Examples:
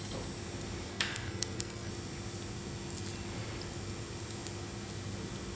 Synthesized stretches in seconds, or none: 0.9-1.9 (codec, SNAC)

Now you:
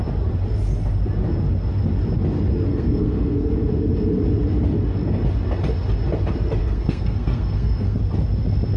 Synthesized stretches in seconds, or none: 2.7-3.5 (codec, SNAC); 6.6-8.0

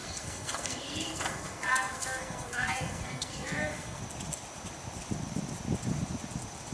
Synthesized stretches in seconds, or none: 0.0-4.0 (codec, SNAC)

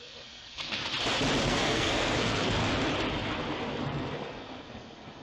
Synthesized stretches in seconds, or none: 0.0-0.8 (codec, SNAC); 1.4-2.6; 3.8-5.2

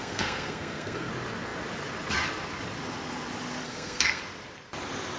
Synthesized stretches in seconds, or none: 0.0-1.1 (codec, SNAC); 3.6-4.2

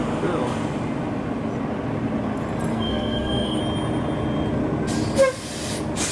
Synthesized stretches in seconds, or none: 2.7-3.6 (codec, SNAC)

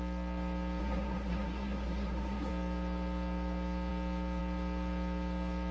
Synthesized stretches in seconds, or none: 0.8-2.5 (codec, SNAC)